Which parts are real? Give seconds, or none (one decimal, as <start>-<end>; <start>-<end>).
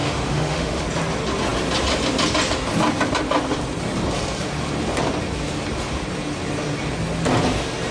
0.8-7.9